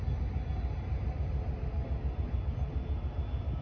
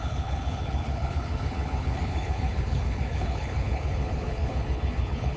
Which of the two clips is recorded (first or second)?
first